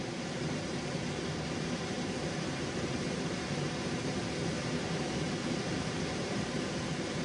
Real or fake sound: fake